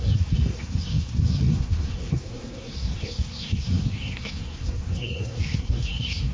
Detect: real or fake fake